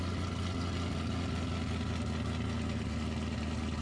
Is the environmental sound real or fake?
real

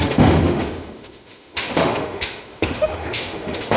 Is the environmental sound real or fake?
fake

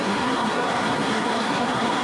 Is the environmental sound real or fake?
fake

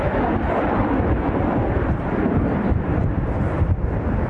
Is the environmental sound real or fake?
real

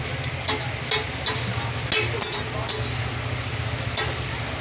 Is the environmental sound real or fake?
real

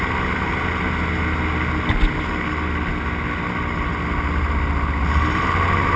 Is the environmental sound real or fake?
real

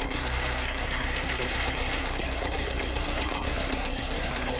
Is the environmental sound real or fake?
fake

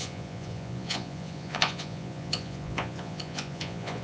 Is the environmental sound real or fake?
fake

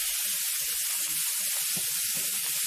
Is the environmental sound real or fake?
real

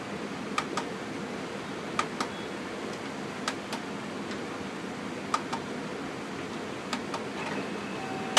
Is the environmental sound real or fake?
real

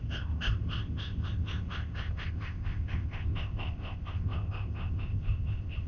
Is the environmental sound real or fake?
fake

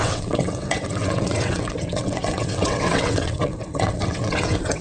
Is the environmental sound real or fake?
fake